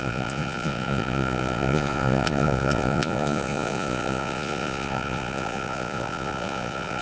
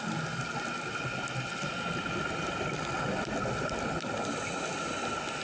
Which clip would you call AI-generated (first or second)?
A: first